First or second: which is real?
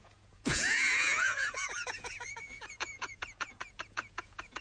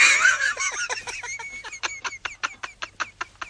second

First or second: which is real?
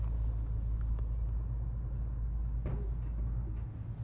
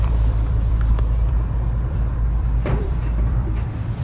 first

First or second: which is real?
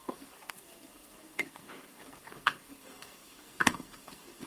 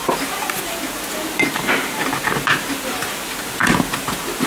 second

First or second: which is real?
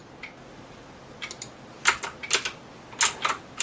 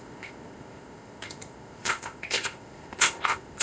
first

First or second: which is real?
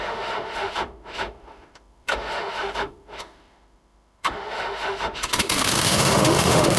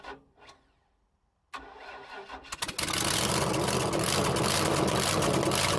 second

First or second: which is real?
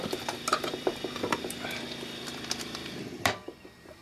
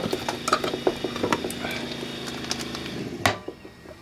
second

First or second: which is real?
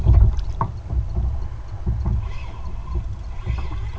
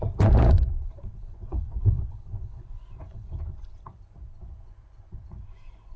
first